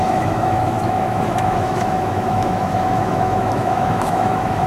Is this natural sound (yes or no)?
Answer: no